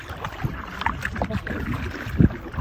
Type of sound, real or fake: real